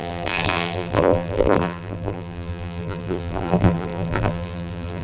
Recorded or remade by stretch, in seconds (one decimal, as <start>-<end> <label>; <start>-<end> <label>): 0.0-5.0 remade